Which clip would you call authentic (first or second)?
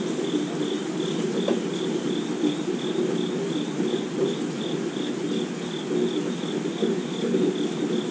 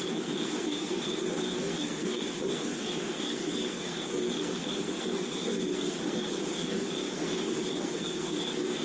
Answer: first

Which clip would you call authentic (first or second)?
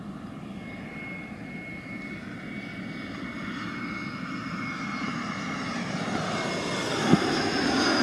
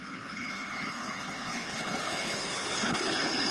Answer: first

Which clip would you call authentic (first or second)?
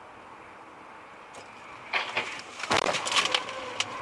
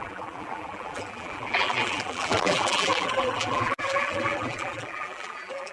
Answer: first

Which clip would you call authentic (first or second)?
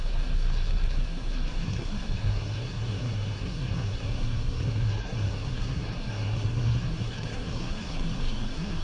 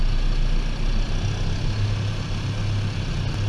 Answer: second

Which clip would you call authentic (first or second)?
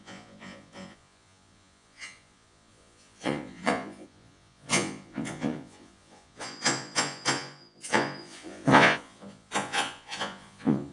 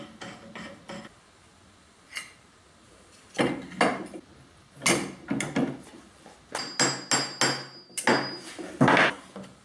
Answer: second